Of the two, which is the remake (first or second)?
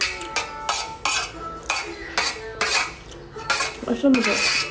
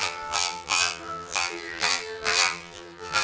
second